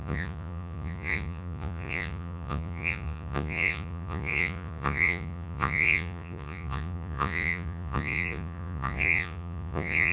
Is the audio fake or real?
fake